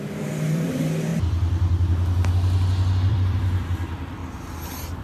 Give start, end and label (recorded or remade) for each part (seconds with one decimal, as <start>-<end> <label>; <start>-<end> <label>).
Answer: 0.0-1.1 remade; 1.1-3.1 recorded; 3.1-4.2 remade; 4.2-5.0 recorded